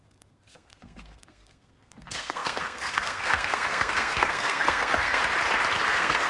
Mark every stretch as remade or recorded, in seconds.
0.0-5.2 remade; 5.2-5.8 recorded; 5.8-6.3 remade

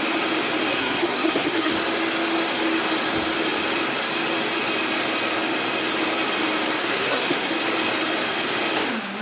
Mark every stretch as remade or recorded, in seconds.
0.0-0.7 recorded; 0.7-1.7 remade; 1.7-6.8 recorded; 6.8-7.5 remade; 7.5-9.2 recorded

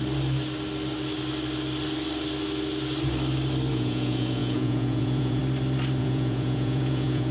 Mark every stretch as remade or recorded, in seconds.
0.0-3.7 recorded; 3.7-5.4 remade; 5.4-6.0 recorded; 6.0-7.3 remade